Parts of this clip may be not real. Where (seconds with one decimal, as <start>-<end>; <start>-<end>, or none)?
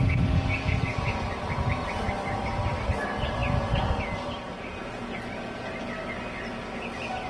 none